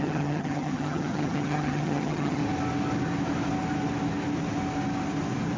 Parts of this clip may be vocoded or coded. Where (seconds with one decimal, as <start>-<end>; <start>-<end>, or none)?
0.0-2.4